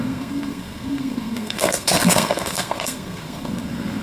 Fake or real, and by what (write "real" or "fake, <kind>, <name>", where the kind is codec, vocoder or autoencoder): fake, codec, SNAC